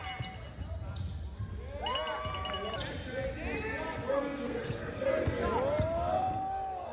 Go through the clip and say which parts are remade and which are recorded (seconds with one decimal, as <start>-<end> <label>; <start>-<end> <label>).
0.0-4.1 recorded; 4.1-5.1 remade; 5.1-6.1 recorded; 6.1-6.9 remade